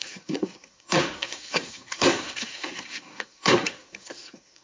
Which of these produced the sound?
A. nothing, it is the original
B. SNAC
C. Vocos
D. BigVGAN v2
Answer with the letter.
B